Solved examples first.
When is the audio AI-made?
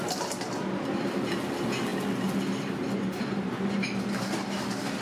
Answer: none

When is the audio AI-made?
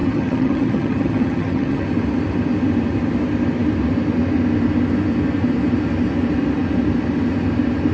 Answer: 0.0-1.8 (vocoder, HiFi-GAN)